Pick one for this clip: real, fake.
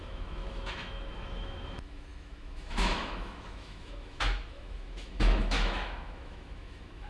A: fake